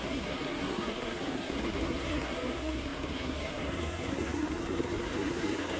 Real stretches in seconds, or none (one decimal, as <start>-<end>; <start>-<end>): none